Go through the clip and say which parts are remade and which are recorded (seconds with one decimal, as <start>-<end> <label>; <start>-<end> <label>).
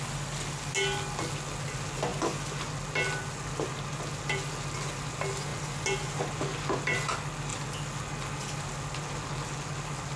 0.0-10.2 recorded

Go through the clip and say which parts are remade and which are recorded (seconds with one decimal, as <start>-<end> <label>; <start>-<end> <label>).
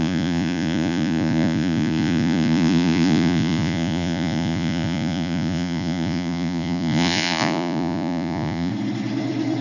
0.0-8.7 remade; 8.7-9.6 recorded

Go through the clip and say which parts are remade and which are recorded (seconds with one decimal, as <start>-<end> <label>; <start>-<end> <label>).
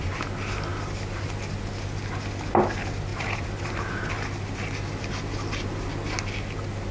0.0-3.1 recorded; 3.1-4.1 remade; 4.1-6.9 recorded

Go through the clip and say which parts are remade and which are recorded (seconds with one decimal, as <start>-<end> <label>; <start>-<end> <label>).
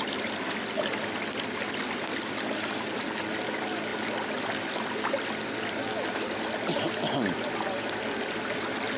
0.0-9.0 recorded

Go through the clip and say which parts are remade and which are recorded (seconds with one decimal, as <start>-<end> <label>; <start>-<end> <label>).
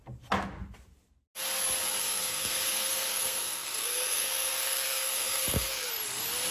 0.0-2.0 recorded; 2.0-5.9 remade; 5.9-6.5 recorded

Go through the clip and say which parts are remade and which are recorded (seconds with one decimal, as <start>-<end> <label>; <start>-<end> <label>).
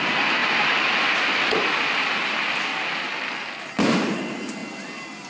0.0-5.3 recorded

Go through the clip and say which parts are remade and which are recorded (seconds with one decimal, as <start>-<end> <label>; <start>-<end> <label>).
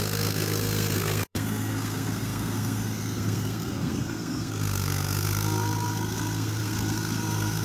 0.0-7.6 remade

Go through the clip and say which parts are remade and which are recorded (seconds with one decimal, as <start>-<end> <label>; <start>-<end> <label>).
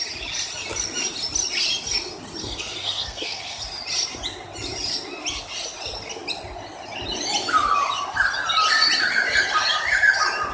0.0-2.4 recorded; 2.4-3.6 remade; 3.6-10.5 recorded